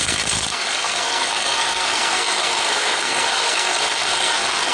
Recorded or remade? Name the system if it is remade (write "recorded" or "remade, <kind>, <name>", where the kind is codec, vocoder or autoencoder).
remade, codec, SNAC